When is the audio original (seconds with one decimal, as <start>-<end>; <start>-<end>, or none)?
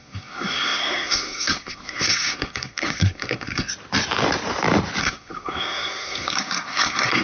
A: 3.7-5.0